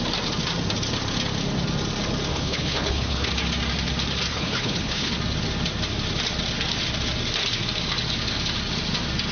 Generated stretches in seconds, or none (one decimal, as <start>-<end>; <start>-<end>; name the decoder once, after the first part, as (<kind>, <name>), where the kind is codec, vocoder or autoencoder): 2.3-3.3 (codec, HILCodec); 4.3-5.1